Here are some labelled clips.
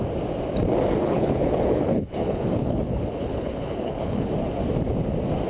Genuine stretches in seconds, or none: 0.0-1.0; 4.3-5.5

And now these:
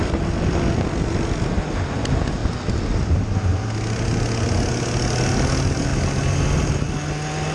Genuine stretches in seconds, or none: 0.0-7.5

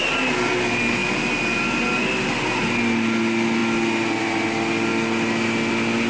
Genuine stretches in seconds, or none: 0.0-6.1

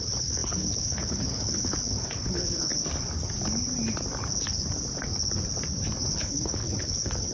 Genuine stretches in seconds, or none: 2.7-6.1

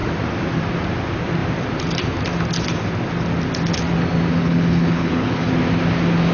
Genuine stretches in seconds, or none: 0.0-4.3; 5.5-6.3

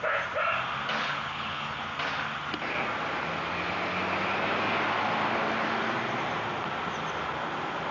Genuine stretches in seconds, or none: 0.0-1.0; 1.8-7.9

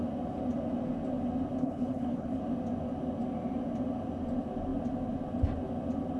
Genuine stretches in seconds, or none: 0.0-1.6; 2.4-6.2

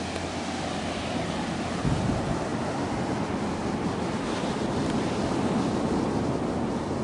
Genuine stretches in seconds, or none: 0.0-7.0